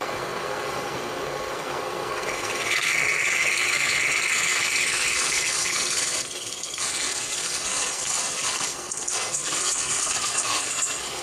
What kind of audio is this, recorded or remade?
remade